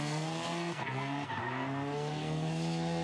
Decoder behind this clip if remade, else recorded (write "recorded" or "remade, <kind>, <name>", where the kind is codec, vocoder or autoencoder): remade, codec, SNAC